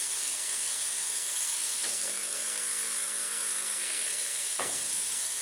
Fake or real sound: fake